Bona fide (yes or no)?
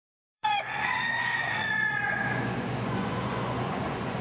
no